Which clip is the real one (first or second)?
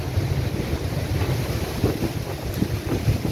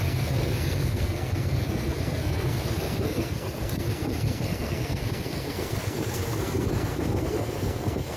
first